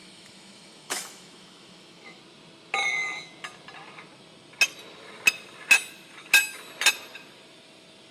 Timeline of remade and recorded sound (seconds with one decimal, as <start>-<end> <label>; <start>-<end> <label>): 0.0-2.2 remade; 2.2-8.1 recorded